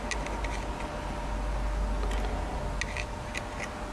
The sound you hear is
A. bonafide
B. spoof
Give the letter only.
A